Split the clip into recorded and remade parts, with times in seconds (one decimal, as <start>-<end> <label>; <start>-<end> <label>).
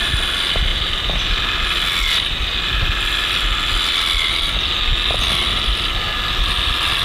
0.0-7.0 recorded